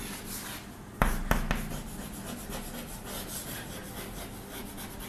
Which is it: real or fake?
real